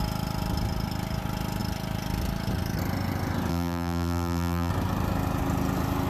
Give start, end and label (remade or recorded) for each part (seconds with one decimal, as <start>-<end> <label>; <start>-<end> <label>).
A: 0.0-3.5 recorded; 3.5-4.7 remade; 4.7-6.1 recorded